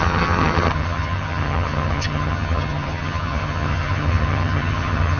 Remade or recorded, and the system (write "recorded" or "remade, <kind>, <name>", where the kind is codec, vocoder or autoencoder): remade, vocoder, HiFi-GAN